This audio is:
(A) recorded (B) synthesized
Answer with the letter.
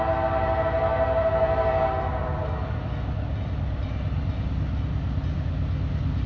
A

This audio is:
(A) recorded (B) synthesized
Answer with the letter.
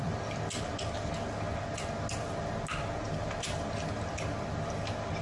A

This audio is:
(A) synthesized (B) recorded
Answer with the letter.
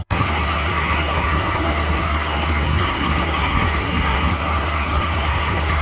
A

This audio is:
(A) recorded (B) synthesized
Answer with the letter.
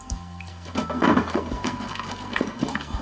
B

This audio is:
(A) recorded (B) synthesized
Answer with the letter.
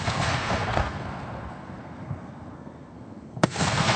B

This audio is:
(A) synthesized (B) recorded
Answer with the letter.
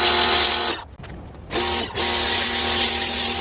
B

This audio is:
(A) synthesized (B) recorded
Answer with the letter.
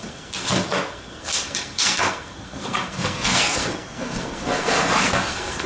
A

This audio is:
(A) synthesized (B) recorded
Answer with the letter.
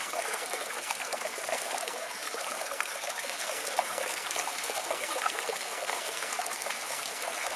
A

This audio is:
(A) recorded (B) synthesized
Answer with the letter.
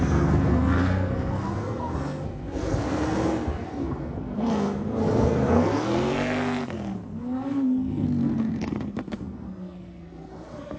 B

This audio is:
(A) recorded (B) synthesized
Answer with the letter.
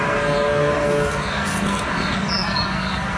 B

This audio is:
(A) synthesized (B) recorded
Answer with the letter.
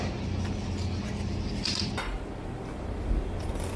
B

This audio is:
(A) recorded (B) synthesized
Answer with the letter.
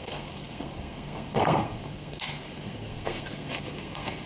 B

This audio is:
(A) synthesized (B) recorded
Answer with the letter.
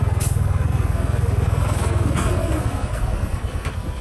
A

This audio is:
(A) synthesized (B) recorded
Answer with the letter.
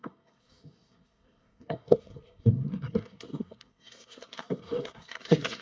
A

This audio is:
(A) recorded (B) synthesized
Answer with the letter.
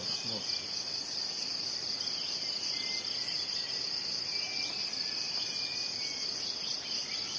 A